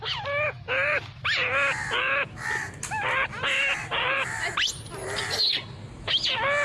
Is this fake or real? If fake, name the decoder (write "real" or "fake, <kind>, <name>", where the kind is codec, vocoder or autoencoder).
real